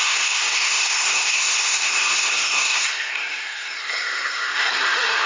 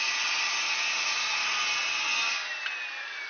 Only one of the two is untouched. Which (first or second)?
second